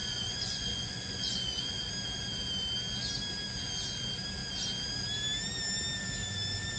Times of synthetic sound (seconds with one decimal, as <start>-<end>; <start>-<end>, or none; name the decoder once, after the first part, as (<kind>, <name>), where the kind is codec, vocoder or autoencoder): 0.0-1.9 (vocoder, Vocos)